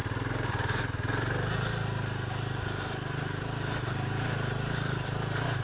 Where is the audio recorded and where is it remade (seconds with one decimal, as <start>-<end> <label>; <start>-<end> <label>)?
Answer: 0.0-5.6 recorded